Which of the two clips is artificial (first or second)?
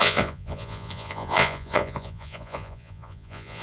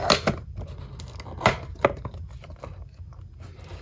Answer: first